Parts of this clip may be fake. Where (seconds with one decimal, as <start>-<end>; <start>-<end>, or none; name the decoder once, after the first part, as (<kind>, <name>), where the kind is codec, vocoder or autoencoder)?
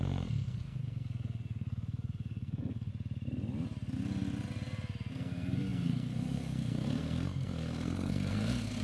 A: 0.0-2.9 (codec, SNAC); 5.1-8.8